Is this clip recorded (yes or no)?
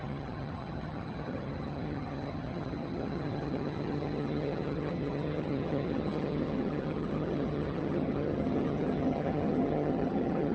no